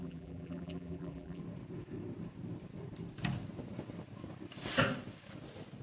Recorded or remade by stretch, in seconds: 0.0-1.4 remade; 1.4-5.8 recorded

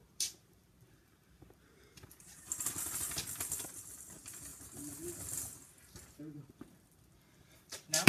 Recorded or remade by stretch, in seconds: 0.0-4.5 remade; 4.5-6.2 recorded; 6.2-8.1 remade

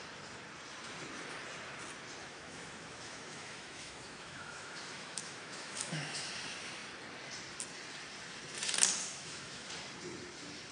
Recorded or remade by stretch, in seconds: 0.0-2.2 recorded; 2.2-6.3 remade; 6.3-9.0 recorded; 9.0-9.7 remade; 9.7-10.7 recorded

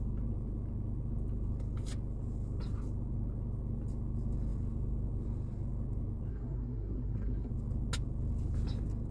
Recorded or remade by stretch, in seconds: 0.0-6.3 recorded; 6.3-7.5 remade; 7.5-9.1 recorded

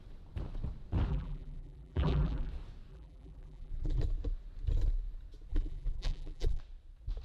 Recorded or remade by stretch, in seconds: 0.0-1.1 recorded; 1.1-2.5 remade; 2.5-2.9 recorded; 2.9-4.0 remade; 4.0-5.5 recorded; 5.5-6.6 remade; 6.6-7.2 recorded

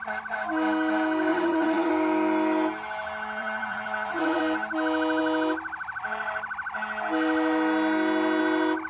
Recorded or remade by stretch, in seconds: 0.0-1.3 recorded; 1.3-1.9 remade; 1.9-3.4 recorded; 3.4-4.4 remade; 4.4-8.9 recorded

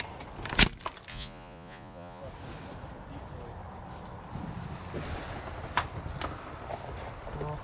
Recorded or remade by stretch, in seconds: 0.0-1.1 recorded; 1.1-2.2 remade; 2.2-7.6 recorded

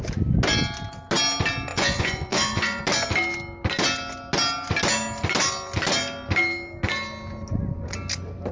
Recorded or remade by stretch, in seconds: 0.0-1.7 recorded; 1.7-2.8 remade; 2.8-8.5 recorded